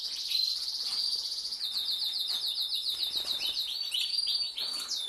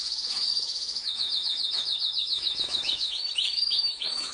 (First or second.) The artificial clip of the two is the second